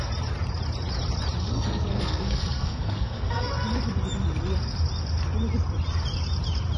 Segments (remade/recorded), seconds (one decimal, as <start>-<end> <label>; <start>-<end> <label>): 0.0-1.4 recorded; 1.4-3.5 remade; 3.5-6.8 recorded